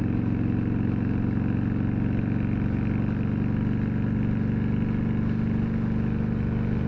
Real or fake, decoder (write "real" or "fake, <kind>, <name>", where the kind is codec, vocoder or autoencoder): real